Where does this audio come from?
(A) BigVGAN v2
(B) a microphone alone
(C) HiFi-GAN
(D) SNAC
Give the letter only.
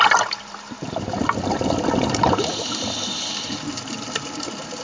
A